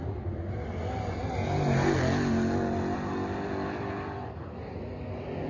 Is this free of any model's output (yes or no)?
yes